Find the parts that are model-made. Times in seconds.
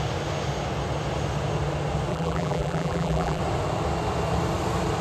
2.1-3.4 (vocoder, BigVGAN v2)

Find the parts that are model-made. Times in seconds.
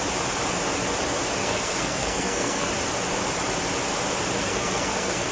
1.4-2.7 (codec, SNAC); 4.4-5.3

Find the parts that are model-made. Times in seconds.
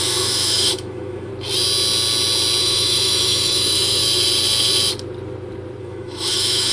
0.0-1.3 (autoencoder, DAC-VAE); 2.6-4.0; 5.8-6.7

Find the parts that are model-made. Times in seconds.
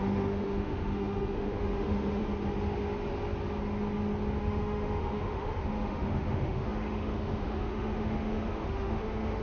0.0-2.2 (autoencoder, DAC-VAE); 4.4-9.4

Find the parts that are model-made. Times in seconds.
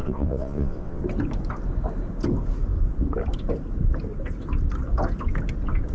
0.0-1.0 (vocoder, WaveNeXt)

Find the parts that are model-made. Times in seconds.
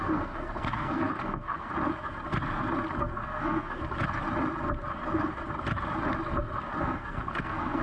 0.0-1.7 (codec, SNAC); 3.0-3.8; 6.8-7.8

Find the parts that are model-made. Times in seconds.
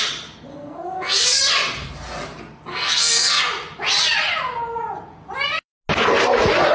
0.5-1.4 (codec, SNAC); 2.7-3.4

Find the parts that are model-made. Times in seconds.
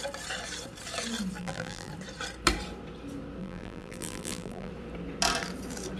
1.4-1.9 (vocoder, BigVGAN v2); 3.4-4.7